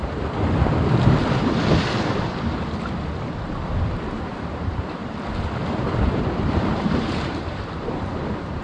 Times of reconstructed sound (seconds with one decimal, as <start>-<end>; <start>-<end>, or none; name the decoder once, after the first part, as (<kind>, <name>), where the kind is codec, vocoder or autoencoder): 4.3-5.0 (vocoder, BigVGAN v2); 6.1-8.6